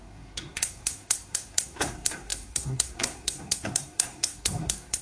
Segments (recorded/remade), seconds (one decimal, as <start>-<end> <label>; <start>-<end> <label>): 0.0-5.0 remade